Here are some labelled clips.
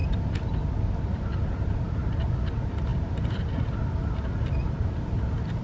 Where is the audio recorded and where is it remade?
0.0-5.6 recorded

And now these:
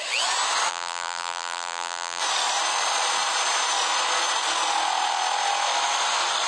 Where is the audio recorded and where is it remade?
0.0-0.7 recorded; 0.7-2.2 remade; 2.2-6.5 recorded

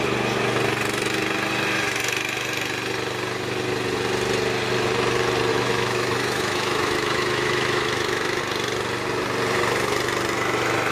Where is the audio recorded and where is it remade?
0.0-5.5 recorded; 5.5-8.4 remade; 8.4-10.9 recorded

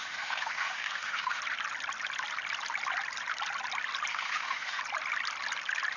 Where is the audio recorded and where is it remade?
0.0-1.4 remade; 1.4-4.1 recorded; 4.1-4.8 remade; 4.8-6.0 recorded

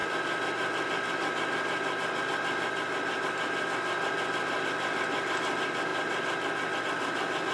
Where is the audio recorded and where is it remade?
0.0-7.5 recorded